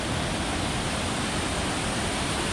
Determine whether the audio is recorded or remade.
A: recorded